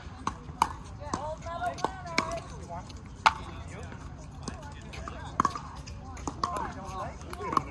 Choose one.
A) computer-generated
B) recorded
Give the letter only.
B